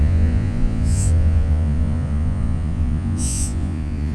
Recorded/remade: remade